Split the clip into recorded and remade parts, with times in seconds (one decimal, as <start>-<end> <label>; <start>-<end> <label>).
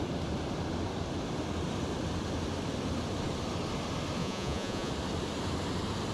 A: 0.0-4.2 recorded; 4.2-4.9 remade; 4.9-6.1 recorded